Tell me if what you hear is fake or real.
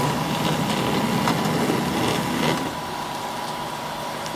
real